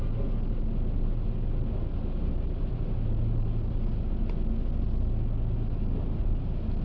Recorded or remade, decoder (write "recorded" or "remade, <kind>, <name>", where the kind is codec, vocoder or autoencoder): recorded